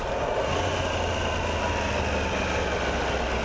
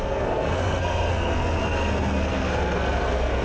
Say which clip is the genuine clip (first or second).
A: first